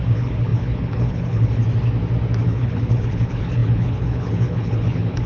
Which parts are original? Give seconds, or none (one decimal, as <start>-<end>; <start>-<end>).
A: 1.6-2.4